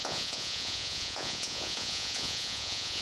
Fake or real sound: fake